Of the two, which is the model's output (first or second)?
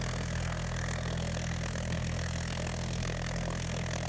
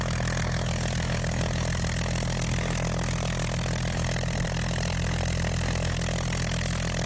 first